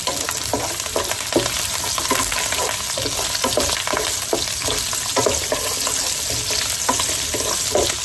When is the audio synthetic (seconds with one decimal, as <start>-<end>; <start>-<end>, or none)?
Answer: none